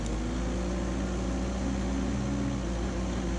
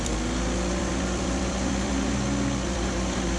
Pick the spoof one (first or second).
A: second